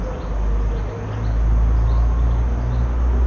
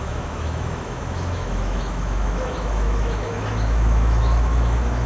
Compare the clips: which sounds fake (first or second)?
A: second